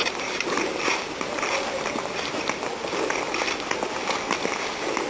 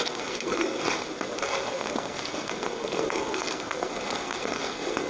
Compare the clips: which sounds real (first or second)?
first